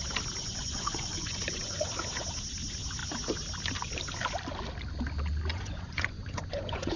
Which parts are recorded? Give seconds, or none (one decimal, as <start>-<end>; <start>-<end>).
0.0-0.4; 1.9-5.5